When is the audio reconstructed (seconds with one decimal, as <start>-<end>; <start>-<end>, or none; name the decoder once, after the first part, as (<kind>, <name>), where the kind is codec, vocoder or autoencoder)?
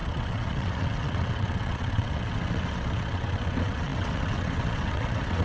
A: 0.0-5.4 (vocoder, WaveNeXt)